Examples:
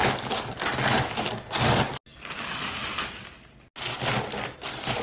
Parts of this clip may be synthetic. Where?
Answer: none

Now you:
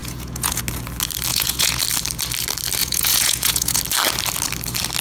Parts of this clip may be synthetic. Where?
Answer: 0.0-0.6 (vocoder, Vocos); 1.3-1.8; 2.8-3.8